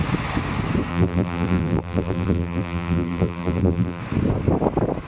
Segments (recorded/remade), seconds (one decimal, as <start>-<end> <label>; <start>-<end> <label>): 0.0-0.9 recorded; 0.9-4.0 remade; 4.0-5.1 recorded